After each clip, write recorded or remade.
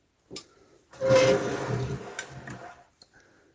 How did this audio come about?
recorded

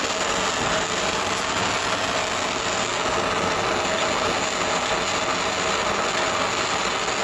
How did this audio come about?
recorded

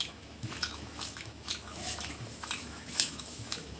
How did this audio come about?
remade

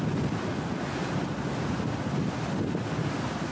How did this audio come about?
recorded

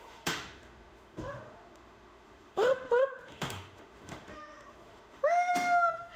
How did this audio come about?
remade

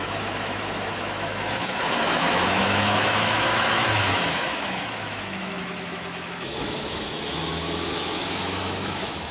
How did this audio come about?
remade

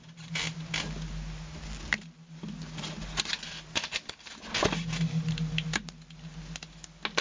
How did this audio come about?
recorded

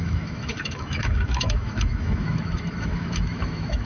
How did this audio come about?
remade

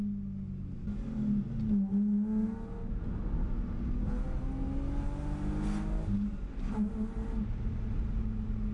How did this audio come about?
recorded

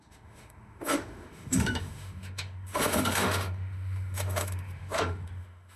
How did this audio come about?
remade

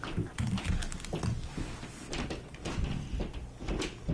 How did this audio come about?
recorded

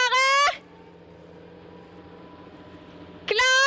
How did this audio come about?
recorded